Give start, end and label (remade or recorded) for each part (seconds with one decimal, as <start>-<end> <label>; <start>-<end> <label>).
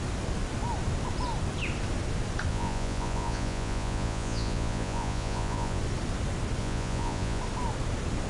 0.0-2.5 recorded; 2.5-5.8 remade; 5.8-6.6 recorded; 6.6-7.4 remade; 7.4-8.3 recorded